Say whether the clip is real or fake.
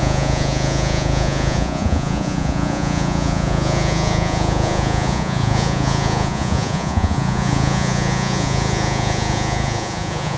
fake